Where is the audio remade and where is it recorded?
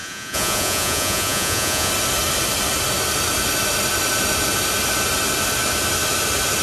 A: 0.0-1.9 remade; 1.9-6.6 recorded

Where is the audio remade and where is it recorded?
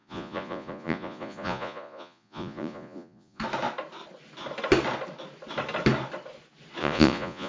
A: 0.0-3.4 remade; 3.4-6.8 recorded; 6.8-7.5 remade